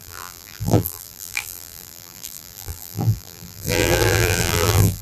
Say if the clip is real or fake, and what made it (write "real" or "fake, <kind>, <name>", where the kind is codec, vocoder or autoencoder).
fake, vocoder, BigVGAN v2